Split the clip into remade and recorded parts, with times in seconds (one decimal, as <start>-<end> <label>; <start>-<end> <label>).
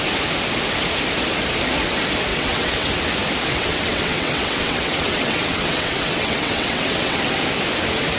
0.0-2.3 recorded; 2.3-3.0 remade; 3.0-3.5 recorded; 3.5-7.2 remade; 7.2-8.2 recorded